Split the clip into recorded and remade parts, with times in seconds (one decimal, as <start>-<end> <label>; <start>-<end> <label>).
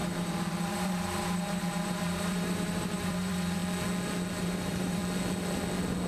0.0-3.6 remade; 3.6-4.4 recorded; 4.4-5.0 remade; 5.0-6.1 recorded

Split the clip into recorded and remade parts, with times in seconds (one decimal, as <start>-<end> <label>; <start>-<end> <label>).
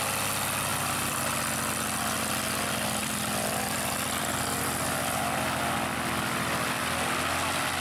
0.0-0.7 recorded; 0.7-1.2 remade; 1.2-3.0 recorded; 3.0-5.2 remade; 5.2-7.8 recorded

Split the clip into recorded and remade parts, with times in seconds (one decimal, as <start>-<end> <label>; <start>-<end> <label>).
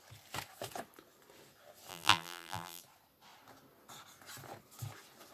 0.0-1.9 recorded; 1.9-2.8 remade; 2.8-5.3 recorded